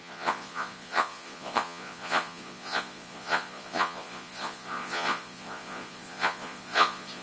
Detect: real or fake fake